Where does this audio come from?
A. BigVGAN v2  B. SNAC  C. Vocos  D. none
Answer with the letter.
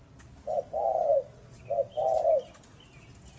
D